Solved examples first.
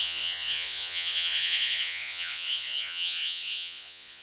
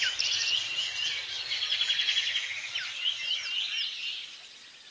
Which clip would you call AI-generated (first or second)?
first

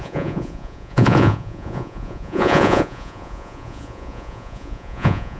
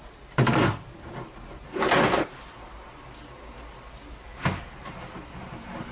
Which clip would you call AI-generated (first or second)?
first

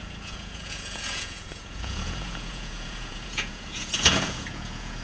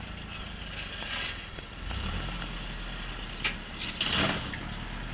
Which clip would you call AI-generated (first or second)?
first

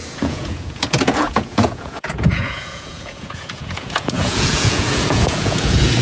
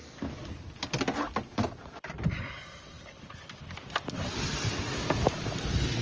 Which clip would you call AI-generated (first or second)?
first